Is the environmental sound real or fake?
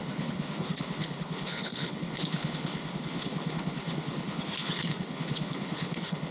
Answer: fake